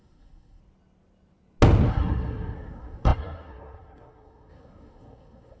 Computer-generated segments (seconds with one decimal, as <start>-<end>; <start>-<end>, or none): 0.0-0.6; 1.9-5.6